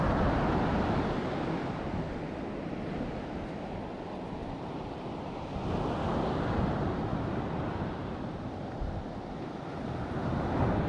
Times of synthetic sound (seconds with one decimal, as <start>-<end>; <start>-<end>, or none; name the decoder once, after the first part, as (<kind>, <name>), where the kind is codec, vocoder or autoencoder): none